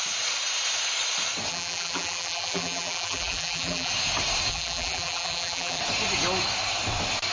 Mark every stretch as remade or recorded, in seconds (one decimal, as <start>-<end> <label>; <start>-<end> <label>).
0.0-1.5 recorded; 1.5-3.9 remade; 3.9-4.5 recorded; 4.5-5.8 remade; 5.8-7.3 recorded